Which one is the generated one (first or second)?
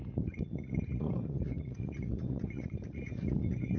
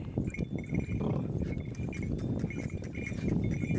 first